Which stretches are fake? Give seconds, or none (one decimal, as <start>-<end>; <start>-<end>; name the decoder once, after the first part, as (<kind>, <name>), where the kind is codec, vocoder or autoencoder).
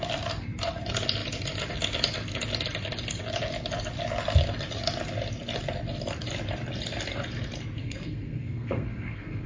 7.8-9.5 (codec, SNAC)